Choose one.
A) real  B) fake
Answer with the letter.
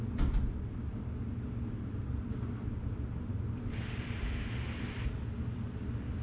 A